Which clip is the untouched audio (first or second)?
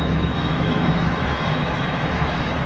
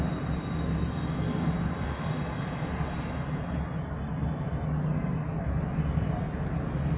second